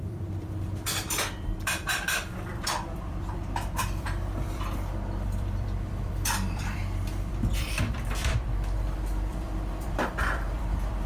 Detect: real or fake fake